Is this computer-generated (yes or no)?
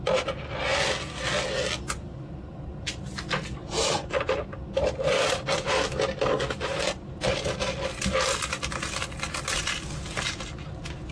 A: no